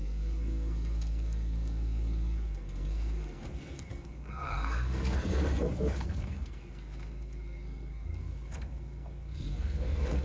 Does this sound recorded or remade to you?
remade